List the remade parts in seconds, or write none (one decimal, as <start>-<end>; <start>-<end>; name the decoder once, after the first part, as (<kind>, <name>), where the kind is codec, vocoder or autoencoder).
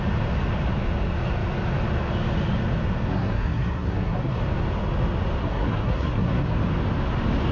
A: 3.1-4.4 (codec, SNAC); 5.4-6.6